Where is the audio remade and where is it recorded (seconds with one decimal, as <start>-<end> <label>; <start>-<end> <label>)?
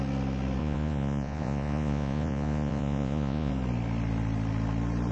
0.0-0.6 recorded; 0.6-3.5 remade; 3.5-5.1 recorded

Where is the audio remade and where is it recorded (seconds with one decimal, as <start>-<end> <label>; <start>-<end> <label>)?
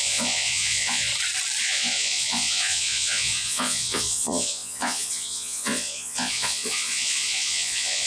0.0-1.1 remade; 1.1-1.6 recorded; 1.6-8.1 remade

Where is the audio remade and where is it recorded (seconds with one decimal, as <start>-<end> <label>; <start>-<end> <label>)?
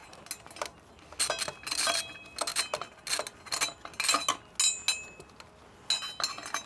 0.0-6.7 recorded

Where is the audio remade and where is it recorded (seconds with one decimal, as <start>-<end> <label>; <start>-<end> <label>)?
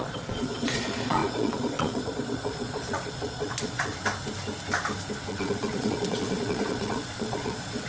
0.0-3.9 remade; 3.9-5.3 recorded; 5.3-7.9 remade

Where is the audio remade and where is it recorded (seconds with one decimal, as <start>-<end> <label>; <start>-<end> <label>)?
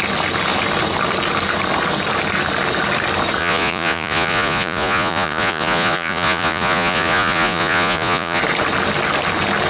0.0-3.4 recorded; 3.4-8.4 remade; 8.4-9.7 recorded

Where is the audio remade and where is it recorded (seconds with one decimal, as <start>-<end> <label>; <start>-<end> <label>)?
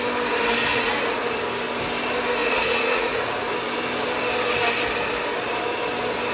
0.0-0.7 recorded; 0.7-1.2 remade; 1.2-2.4 recorded; 2.4-3.4 remade; 3.4-6.3 recorded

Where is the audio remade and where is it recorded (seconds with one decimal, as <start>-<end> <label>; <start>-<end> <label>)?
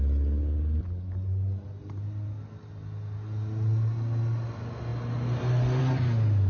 0.0-6.5 recorded